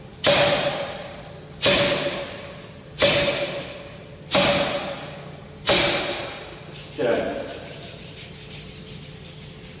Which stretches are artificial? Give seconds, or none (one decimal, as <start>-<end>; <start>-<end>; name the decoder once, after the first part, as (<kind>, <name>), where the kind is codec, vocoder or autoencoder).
7.1-8.7 (vocoder, BigVGAN v2)